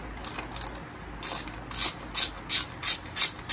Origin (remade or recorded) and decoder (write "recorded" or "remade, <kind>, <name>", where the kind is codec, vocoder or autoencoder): recorded